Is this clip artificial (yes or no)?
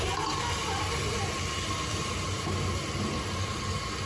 no